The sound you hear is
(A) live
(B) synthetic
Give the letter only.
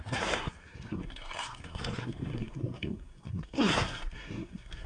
B